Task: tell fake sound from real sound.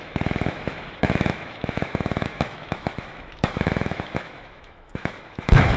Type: fake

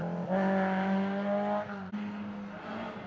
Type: real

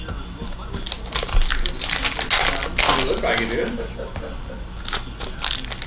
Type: real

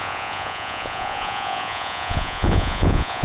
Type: fake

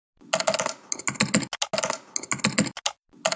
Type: real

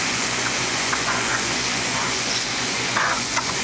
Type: fake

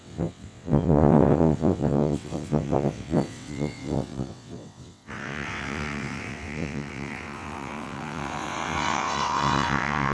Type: fake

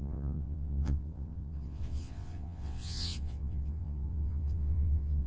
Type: fake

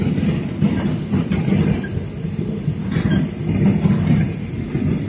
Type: real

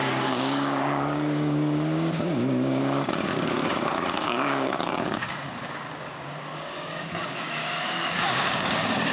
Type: fake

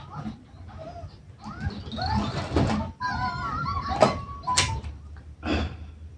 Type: real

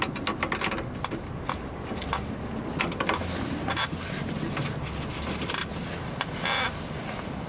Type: real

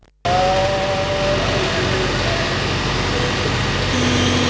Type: real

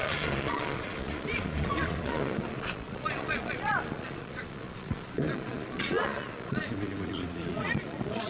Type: fake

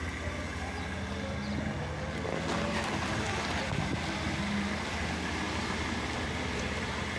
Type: real